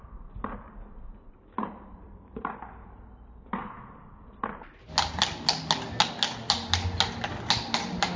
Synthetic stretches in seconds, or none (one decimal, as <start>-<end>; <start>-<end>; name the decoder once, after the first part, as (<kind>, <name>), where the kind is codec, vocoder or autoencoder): none